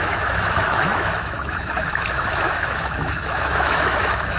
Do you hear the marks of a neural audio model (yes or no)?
yes